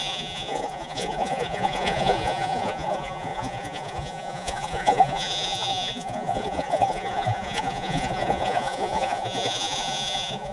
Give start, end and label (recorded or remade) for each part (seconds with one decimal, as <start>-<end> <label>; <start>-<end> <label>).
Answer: 0.0-10.5 remade